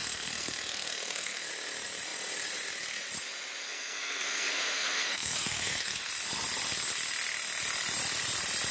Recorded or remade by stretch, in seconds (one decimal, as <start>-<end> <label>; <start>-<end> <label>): 0.0-1.5 remade; 1.5-3.6 recorded; 3.6-6.1 remade; 6.1-8.7 recorded